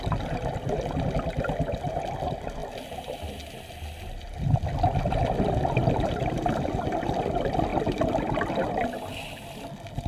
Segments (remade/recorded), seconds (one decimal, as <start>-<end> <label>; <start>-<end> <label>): 0.0-10.1 recorded